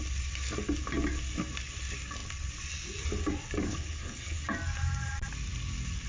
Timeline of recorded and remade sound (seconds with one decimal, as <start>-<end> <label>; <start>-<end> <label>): 0.0-3.7 recorded; 3.7-4.4 remade; 4.4-6.1 recorded